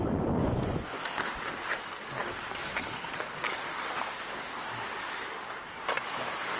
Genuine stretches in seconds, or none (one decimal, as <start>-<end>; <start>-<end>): 0.0-0.4; 1.0-6.6